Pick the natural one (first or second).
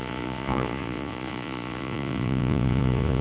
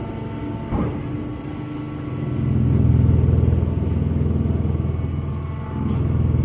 second